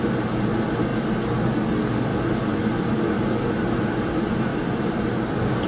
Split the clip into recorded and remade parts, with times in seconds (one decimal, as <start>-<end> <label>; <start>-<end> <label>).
0.0-5.7 recorded